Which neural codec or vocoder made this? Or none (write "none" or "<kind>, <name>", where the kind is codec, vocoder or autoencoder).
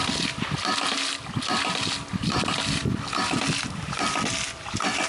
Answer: none